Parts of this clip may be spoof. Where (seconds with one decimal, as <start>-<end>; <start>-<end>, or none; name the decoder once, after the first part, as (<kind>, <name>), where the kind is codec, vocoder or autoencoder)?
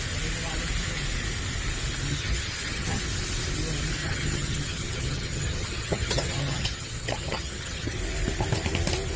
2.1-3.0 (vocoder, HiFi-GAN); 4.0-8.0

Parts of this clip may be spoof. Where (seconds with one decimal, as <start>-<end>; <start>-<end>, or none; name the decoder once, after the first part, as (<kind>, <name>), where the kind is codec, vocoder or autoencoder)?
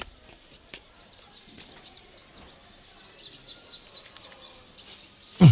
0.0-2.2 (vocoder, BigVGAN v2)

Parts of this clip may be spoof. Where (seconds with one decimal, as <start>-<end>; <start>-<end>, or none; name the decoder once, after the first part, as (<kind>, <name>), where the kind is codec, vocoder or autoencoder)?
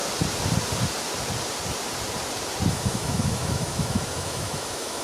2.7-5.0 (autoencoder, DAC-VAE)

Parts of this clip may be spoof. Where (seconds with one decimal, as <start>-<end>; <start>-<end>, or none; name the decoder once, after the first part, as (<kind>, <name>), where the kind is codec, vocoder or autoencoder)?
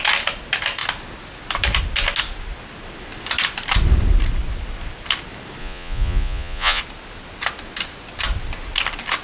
5.6-6.8 (vocoder, Vocos)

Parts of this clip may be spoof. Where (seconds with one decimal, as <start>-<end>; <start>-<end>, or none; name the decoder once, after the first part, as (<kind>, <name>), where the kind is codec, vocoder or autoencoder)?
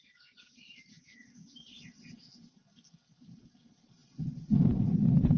none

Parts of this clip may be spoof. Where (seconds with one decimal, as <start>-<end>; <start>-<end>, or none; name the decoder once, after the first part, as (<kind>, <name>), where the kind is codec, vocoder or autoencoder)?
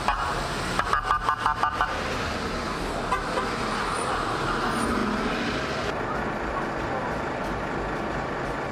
none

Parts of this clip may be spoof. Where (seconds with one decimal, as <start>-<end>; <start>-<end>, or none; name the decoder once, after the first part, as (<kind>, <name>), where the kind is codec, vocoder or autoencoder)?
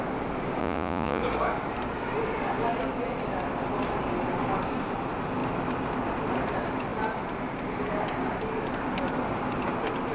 0.6-1.2 (vocoder, Vocos)